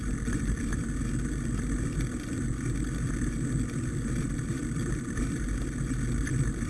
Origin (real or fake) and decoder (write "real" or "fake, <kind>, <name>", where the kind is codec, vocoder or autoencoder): real